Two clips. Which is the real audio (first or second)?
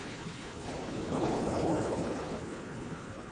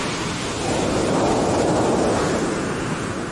second